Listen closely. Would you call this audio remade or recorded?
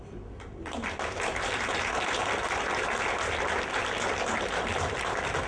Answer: recorded